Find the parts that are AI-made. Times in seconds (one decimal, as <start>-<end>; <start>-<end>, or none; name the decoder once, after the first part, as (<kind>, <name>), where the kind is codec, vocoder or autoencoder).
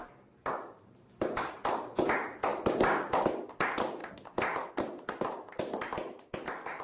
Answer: none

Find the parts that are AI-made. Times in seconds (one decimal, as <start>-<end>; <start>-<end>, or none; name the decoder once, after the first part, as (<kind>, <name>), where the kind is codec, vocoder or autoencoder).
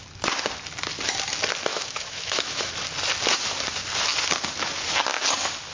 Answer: 1.7-2.7 (autoencoder, DAC-VAE)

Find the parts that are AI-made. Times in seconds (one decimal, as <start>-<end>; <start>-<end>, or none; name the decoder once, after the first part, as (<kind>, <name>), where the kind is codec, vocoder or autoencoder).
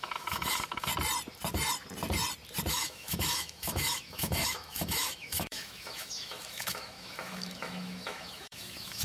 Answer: 0.0-0.9 (autoencoder, DAC-VAE); 2.7-9.0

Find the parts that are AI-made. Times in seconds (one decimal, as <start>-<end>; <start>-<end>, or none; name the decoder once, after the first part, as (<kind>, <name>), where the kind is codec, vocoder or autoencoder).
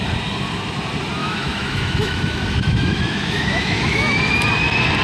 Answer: 1.2-4.2 (autoencoder, DAC-VAE)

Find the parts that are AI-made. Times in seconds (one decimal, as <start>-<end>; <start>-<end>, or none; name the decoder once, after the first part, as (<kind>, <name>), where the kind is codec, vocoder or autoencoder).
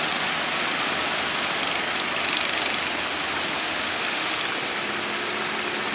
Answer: 3.6-4.4 (autoencoder, DAC-VAE)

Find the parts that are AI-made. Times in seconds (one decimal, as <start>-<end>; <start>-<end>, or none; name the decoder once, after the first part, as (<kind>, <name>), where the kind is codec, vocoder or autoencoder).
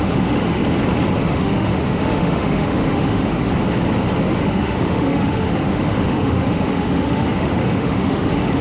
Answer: 0.0-0.6 (autoencoder, DAC-VAE); 1.2-3.5; 4.2-8.6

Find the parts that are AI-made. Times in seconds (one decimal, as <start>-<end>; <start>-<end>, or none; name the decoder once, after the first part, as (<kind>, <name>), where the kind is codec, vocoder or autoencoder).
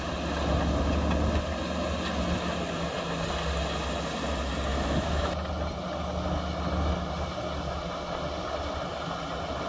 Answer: 4.7-5.3 (autoencoder, DAC-VAE)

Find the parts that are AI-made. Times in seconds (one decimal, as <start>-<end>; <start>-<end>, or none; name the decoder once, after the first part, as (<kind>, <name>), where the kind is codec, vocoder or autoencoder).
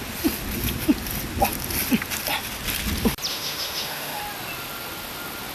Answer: 3.3-4.2 (autoencoder, DAC-VAE)